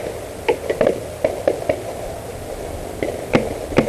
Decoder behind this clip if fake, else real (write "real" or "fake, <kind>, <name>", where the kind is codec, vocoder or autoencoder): real